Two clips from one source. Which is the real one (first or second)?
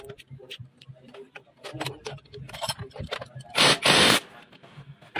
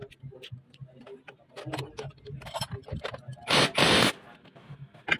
second